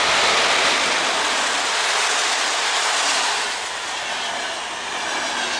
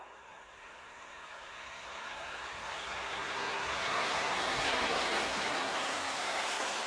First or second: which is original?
first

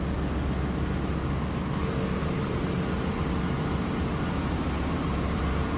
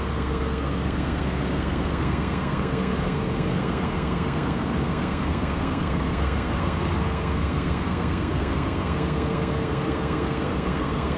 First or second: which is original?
first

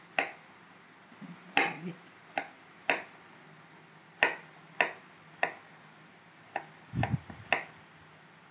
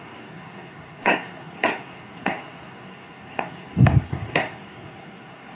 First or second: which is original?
first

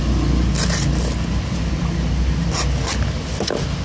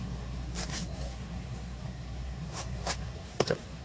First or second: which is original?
first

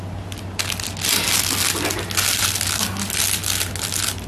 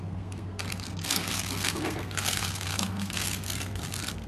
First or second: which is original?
first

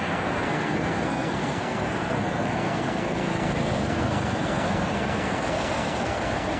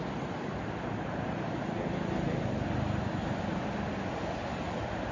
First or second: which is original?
second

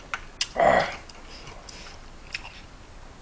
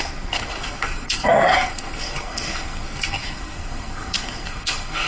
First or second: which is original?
first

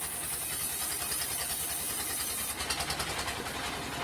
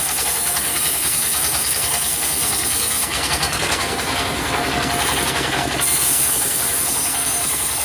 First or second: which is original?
first